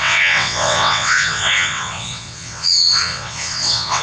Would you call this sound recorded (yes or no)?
no